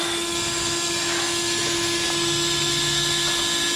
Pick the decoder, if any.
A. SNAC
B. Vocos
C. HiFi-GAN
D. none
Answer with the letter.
D